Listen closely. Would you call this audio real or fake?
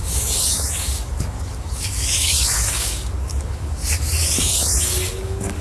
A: fake